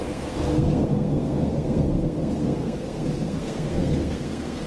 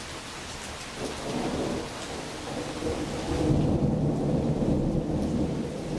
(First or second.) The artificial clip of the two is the first